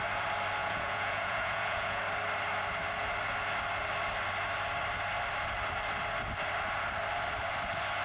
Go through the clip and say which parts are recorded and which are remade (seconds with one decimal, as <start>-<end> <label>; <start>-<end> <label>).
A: 0.0-0.6 recorded; 0.6-2.0 remade; 2.0-8.0 recorded